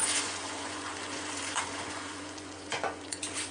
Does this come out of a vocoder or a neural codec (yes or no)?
yes